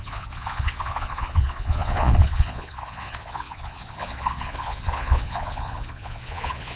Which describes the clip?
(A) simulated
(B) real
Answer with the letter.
A